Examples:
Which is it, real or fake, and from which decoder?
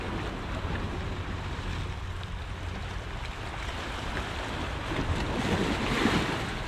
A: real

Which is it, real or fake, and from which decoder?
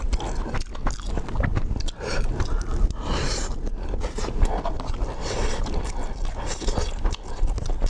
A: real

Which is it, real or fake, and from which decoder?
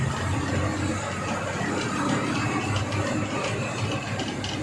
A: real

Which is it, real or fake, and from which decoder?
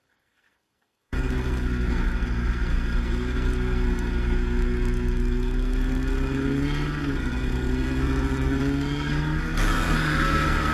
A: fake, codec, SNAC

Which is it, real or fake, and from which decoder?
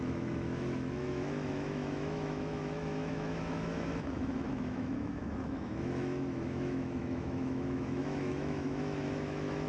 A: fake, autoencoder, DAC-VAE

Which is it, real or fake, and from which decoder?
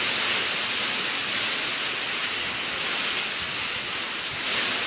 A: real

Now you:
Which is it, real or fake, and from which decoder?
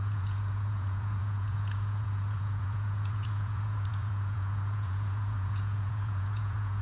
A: fake, vocoder, Vocos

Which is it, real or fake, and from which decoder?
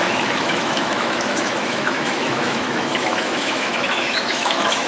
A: fake, autoencoder, DAC-VAE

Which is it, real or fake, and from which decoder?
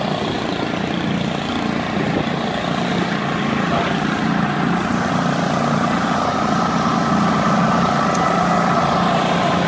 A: real